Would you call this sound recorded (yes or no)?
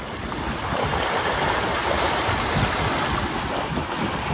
yes